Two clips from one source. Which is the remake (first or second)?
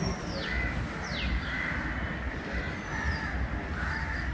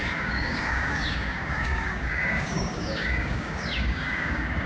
second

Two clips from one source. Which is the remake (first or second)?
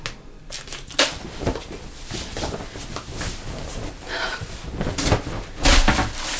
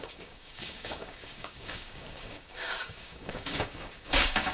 second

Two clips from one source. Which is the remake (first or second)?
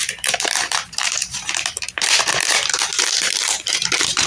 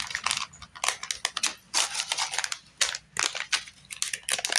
first